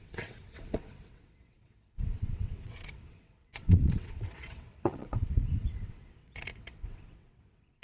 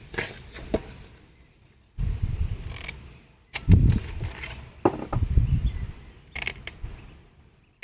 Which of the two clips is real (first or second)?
second